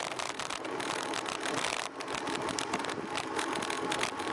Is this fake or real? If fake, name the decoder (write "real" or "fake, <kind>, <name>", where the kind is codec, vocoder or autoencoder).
real